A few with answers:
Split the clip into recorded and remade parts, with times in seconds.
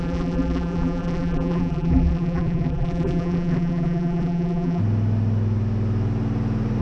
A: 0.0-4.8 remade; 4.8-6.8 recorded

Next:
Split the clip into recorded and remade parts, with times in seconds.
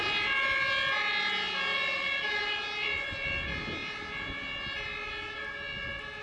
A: 0.0-1.7 recorded; 1.7-2.6 remade; 2.6-6.2 recorded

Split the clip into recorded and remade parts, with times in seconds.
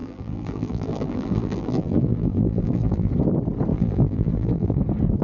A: 0.0-3.1 remade; 3.1-3.7 recorded; 3.7-4.8 remade; 4.8-5.2 recorded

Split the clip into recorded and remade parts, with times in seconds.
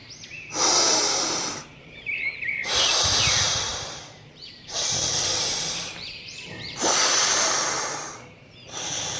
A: 0.0-0.9 recorded; 0.9-9.2 remade